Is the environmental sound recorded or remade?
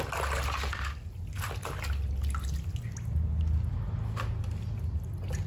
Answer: recorded